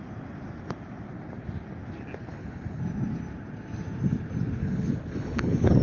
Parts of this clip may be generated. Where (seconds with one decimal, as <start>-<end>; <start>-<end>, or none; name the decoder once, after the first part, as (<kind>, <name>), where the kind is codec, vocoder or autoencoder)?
2.3-2.8 (codec, HILCodec); 4.6-5.8